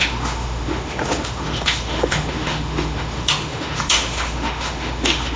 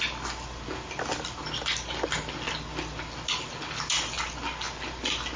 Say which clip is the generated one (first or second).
first